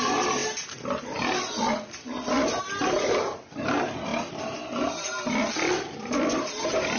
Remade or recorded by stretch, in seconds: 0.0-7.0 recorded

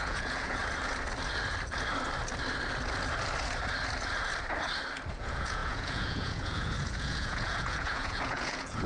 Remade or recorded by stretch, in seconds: 0.0-0.6 remade; 0.6-5.1 recorded; 5.1-8.9 remade

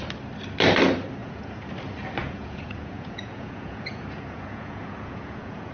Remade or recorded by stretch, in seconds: 0.0-1.2 recorded; 1.2-1.7 remade; 1.7-2.2 recorded; 2.2-5.7 remade

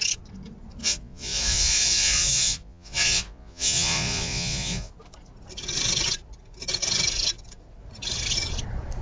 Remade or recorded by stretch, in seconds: 0.0-0.8 recorded; 0.8-4.9 remade; 4.9-9.0 recorded

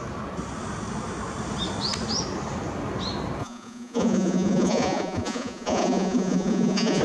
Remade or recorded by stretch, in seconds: 0.0-3.4 recorded; 3.4-7.0 remade